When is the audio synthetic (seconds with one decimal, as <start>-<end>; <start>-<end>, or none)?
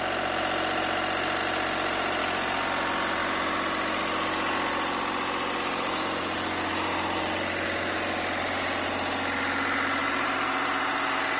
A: 10.0-11.4